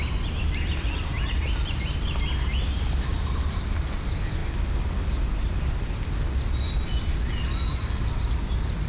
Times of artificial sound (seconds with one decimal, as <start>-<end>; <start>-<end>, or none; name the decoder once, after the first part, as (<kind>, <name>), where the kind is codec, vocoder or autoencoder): none